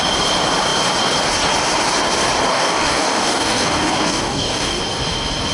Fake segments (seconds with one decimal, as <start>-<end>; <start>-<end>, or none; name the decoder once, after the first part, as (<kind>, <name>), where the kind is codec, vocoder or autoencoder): 2.5-4.8 (codec, DAC)